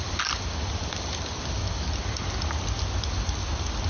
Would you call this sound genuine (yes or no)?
yes